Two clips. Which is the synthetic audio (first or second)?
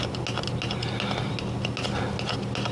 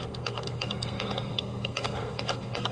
second